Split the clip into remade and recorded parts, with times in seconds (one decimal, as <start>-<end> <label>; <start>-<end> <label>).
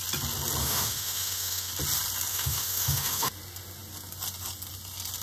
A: 0.0-0.6 recorded; 0.6-1.7 remade; 1.7-2.3 recorded; 2.3-3.3 remade; 3.3-5.2 recorded